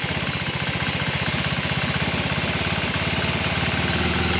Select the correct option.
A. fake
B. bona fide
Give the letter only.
B